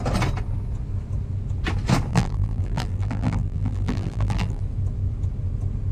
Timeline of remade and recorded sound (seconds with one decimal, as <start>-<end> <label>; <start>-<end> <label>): 0.0-2.1 recorded; 2.1-4.6 remade; 4.6-5.9 recorded